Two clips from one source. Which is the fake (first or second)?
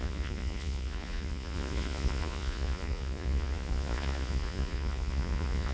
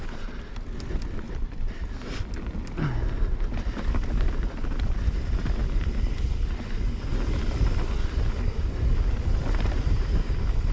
first